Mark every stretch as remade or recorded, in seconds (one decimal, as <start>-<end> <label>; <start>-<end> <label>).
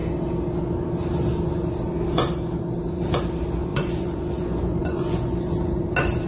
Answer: 0.0-3.7 recorded; 3.7-5.8 remade; 5.8-6.3 recorded